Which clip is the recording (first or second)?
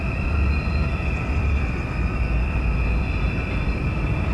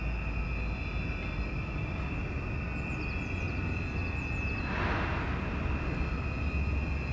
second